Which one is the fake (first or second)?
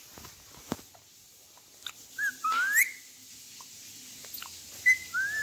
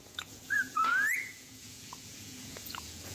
second